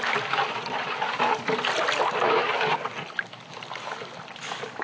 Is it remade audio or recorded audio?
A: recorded